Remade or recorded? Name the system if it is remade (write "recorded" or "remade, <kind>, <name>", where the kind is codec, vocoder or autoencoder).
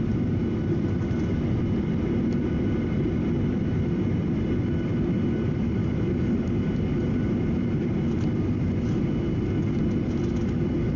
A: recorded